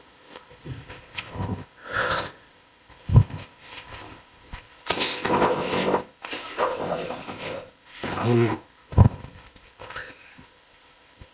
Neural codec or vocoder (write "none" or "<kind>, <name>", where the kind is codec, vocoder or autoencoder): codec, ZipCodec